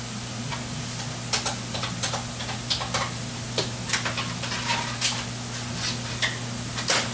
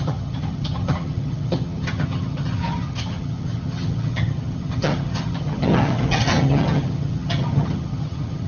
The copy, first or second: second